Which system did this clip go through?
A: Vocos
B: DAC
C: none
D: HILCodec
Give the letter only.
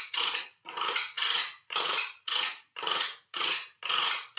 A